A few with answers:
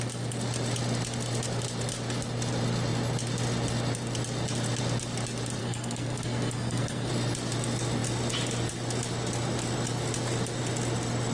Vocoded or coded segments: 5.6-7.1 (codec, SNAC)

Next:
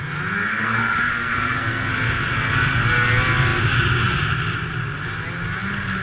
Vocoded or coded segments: 0.5-1.9 (codec, SNAC)

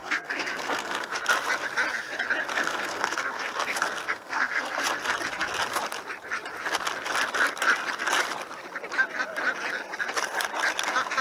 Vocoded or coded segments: 0.0-1.2 (codec, SNAC); 2.5-4.8